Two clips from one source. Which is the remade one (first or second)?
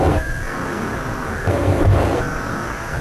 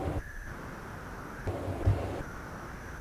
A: first